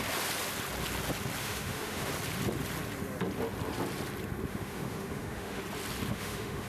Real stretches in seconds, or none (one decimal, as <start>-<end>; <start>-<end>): 0.0-1.4; 2.1-4.5; 5.6-6.1